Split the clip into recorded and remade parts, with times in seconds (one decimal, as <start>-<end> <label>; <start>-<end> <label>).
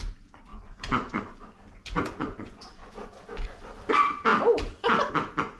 0.0-0.5 recorded; 0.5-3.9 remade; 3.9-5.6 recorded